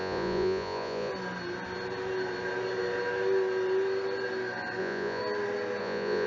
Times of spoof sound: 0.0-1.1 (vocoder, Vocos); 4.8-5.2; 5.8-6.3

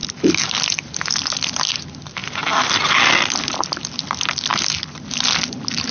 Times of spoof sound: none

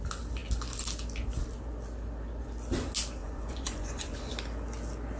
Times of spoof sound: 3.2-4.3 (vocoder, Vocos)

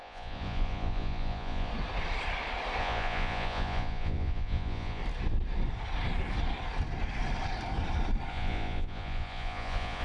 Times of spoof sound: 0.0-1.7 (vocoder, Vocos); 2.8-5.0; 8.3-10.0

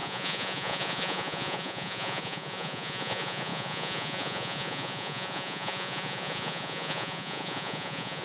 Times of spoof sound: 0.0-8.2 (vocoder, Vocos)

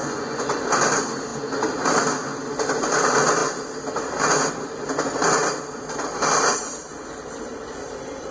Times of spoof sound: 0.0-0.6 (vocoder, Vocos)